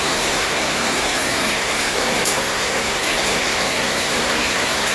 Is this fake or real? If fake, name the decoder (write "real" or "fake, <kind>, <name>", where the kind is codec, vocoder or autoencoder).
fake, codec, SNAC